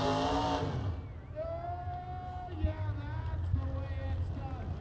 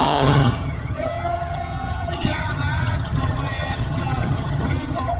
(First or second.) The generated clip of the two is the second